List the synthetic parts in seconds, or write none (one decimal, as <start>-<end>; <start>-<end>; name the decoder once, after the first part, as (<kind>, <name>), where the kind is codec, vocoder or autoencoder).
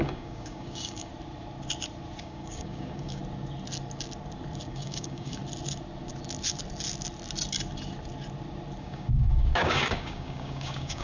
0.0-1.1 (codec, DAC); 2.2-3.2; 4.7-5.4; 8.8-11.0